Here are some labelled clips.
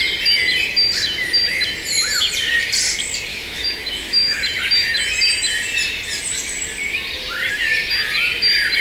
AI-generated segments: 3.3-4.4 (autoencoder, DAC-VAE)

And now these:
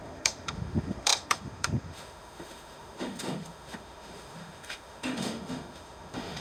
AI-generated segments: 0.0-6.4 (autoencoder, DAC-VAE)

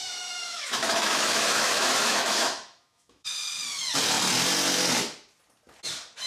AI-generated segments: 0.0-3.3 (autoencoder, DAC-VAE)

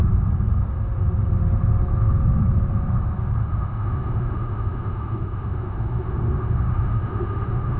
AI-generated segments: 3.4-7.8 (autoencoder, DAC-VAE)

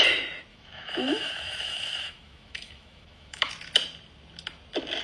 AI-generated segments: 0.5-3.5 (autoencoder, DAC-VAE)

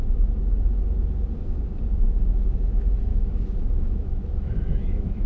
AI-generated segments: 3.1-5.3 (autoencoder, DAC-VAE)